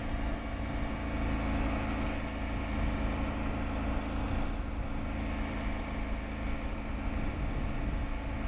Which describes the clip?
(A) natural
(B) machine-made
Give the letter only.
A